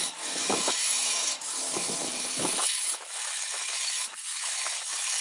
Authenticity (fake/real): fake